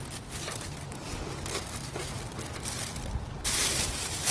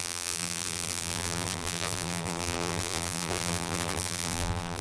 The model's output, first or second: second